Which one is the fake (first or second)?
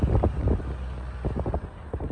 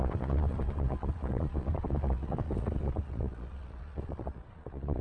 second